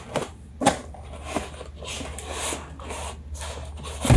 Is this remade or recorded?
recorded